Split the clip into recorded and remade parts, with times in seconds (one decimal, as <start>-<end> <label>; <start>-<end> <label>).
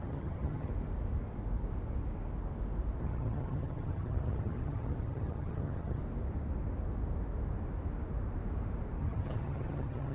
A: 0.0-0.7 remade; 0.7-3.0 recorded; 3.0-6.0 remade; 6.0-9.0 recorded; 9.0-10.1 remade